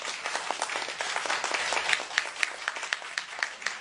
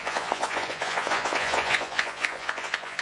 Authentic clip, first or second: first